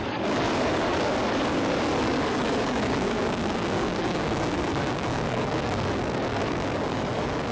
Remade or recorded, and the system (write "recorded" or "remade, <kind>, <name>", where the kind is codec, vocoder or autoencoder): remade, codec, DAC